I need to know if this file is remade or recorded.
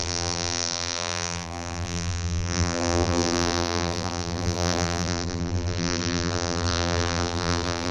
remade